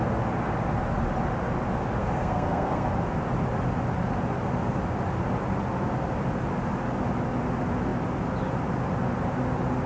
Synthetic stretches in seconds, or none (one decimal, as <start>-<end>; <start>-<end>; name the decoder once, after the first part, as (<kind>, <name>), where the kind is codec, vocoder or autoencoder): 2.0-2.9 (codec, SNAC)

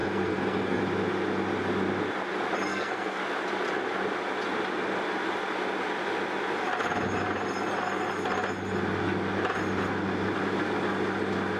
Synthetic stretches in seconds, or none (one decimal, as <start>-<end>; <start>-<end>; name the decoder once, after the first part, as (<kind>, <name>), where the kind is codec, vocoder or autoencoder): 0.0-0.8 (codec, SNAC); 2.7-3.2